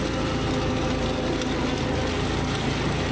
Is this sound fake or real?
real